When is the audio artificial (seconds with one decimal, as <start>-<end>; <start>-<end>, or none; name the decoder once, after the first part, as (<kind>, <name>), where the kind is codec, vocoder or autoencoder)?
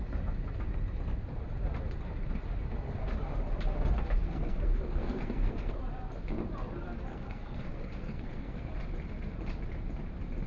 4.2-5.8 (codec, SNAC); 7.1-8.7